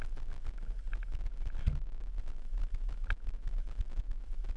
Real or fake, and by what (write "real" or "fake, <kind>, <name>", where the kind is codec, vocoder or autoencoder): real